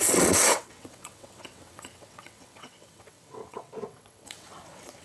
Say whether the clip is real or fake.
fake